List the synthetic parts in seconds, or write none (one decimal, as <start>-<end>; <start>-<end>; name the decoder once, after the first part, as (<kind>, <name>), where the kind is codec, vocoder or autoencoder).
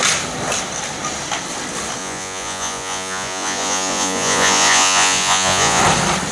2.0-5.8 (vocoder, Vocos)